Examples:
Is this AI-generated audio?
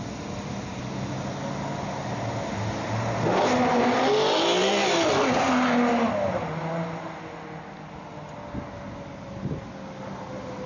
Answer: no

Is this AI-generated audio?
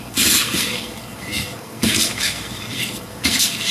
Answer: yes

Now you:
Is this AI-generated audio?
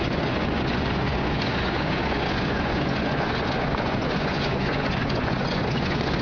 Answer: yes